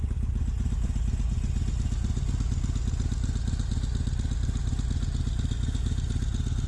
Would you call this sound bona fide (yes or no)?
yes